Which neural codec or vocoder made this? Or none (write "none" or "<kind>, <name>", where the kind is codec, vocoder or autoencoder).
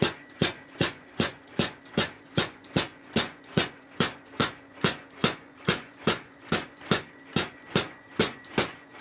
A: vocoder, Vocos